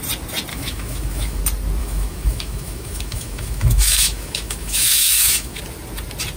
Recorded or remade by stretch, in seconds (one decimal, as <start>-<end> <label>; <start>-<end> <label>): 0.0-0.5 recorded; 0.5-1.4 remade; 1.4-1.8 recorded; 1.8-5.6 remade; 5.6-6.4 recorded